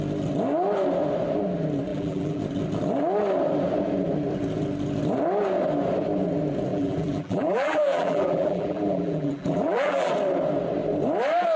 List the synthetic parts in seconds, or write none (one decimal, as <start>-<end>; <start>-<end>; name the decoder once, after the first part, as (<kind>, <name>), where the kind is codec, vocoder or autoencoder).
1.9-2.4 (vocoder, BigVGAN v2); 6.7-10.1